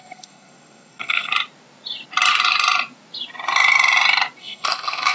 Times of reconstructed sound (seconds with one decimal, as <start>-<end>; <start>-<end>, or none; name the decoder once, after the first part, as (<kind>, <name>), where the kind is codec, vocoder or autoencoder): 0.0-1.3 (codec, SNAC); 4.4-5.1